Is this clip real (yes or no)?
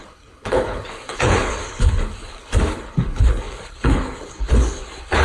no